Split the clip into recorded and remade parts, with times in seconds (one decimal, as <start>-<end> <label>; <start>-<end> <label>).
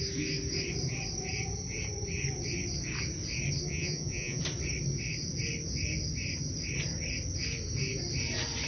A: 0.0-3.7 recorded; 3.7-4.4 remade; 4.4-8.7 recorded